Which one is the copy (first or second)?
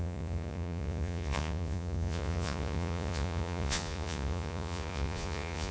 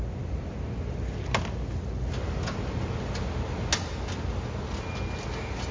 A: first